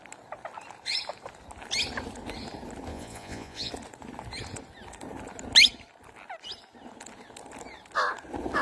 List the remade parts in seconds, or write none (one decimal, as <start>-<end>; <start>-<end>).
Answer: 2.9-3.7